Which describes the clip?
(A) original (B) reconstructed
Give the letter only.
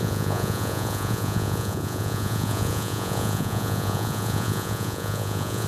B